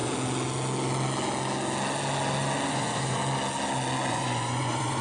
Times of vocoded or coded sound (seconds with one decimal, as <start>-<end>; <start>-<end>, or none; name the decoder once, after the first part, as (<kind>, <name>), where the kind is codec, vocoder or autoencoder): 2.7-3.2 (vocoder, Vocos); 4.1-5.0